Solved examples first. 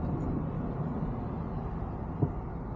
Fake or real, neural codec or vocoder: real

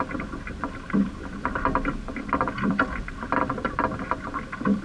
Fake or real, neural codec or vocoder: fake, vocoder, BigVGAN v2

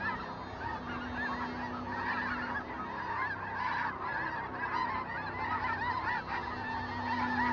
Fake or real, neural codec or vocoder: real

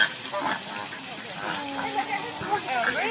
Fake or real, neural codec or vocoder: real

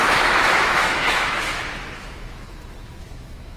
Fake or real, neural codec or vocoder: fake, autoencoder, DAC-VAE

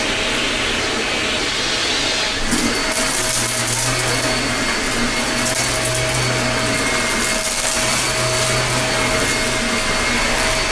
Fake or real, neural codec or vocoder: real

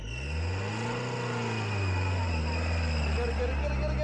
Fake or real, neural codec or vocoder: real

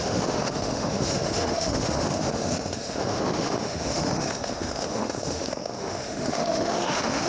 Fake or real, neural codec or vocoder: fake, autoencoder, DAC-VAE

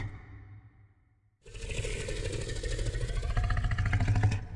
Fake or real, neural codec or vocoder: real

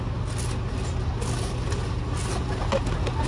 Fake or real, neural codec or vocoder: real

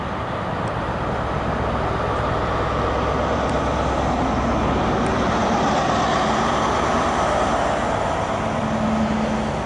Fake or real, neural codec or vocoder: real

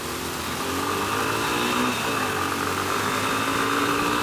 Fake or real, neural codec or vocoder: real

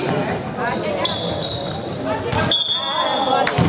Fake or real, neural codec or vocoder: real